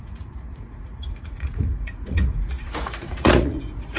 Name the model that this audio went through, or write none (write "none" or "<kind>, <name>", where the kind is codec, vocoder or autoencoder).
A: vocoder, Vocos